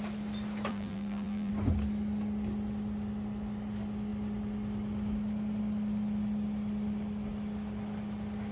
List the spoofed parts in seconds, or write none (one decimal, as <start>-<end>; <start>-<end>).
0.7-1.5